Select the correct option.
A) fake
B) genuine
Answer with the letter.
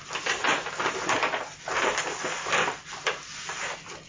B